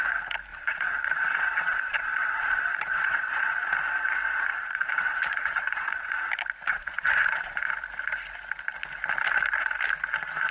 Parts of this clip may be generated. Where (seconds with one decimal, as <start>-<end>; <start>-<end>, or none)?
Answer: 0.5-3.7; 4.5-6.2; 6.7-7.6